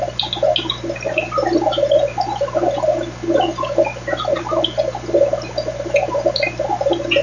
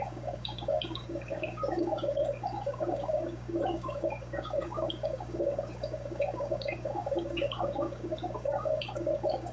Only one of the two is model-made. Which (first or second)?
second